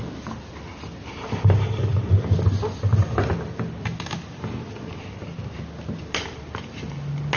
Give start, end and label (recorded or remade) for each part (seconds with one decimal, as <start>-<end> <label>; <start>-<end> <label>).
0.0-7.4 recorded